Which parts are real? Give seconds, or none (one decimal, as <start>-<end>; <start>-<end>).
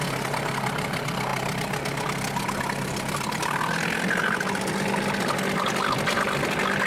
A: 0.0-6.9